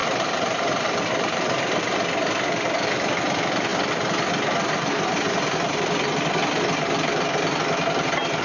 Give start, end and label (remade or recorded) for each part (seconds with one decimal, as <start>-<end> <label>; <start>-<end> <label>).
0.0-1.8 remade; 1.8-8.4 recorded